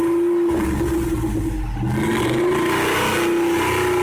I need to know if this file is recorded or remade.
recorded